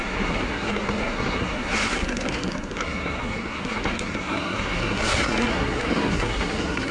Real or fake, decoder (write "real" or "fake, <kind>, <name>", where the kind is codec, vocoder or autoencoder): fake, codec, SNAC